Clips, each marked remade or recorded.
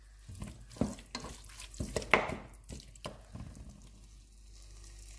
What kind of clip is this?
recorded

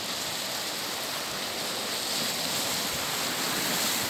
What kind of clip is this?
recorded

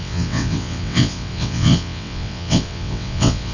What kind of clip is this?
remade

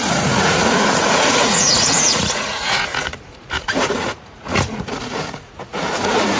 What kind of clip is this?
remade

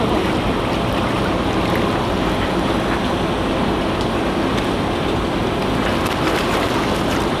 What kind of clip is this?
recorded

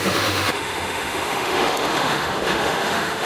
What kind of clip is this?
remade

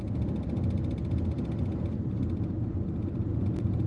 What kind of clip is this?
recorded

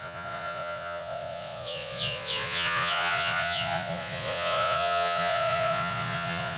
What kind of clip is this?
remade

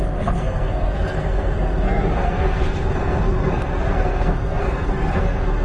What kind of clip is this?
remade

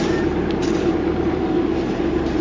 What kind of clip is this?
recorded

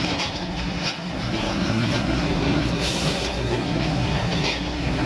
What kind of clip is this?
remade